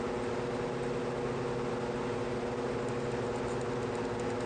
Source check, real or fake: real